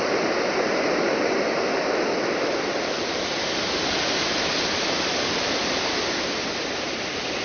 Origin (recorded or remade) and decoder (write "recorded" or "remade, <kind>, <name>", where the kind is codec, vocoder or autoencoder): recorded